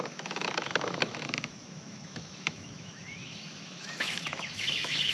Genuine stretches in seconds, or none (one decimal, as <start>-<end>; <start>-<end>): none